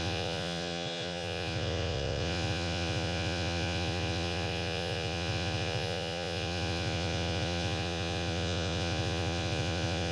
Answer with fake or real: fake